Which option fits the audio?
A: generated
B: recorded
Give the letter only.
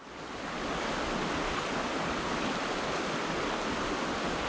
B